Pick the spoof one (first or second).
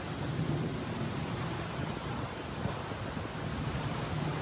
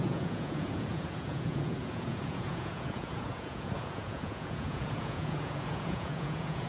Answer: second